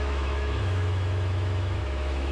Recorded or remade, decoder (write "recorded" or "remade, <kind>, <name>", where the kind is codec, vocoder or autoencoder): remade, autoencoder, DAC-VAE